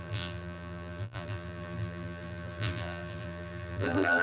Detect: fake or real fake